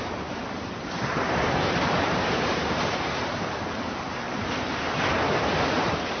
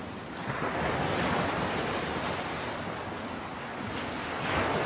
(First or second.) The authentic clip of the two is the second